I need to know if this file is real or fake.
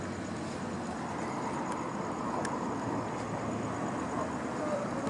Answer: real